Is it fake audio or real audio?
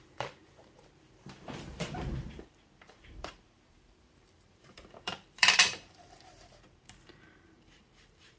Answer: fake